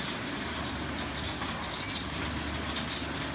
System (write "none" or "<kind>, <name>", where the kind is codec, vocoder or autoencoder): none